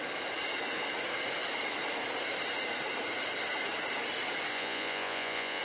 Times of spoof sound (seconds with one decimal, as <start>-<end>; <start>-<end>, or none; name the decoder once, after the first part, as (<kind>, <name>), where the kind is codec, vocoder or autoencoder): 4.5-5.6 (vocoder, Vocos)